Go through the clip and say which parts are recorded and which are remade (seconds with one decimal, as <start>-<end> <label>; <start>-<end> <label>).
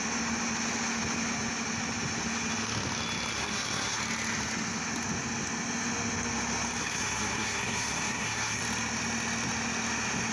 0.0-3.3 recorded; 3.3-4.0 remade; 4.0-6.8 recorded; 6.8-8.6 remade; 8.6-10.3 recorded